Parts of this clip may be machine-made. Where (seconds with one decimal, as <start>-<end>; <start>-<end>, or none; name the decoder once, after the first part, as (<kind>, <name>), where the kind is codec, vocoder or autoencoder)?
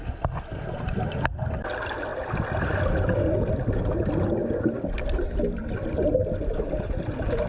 none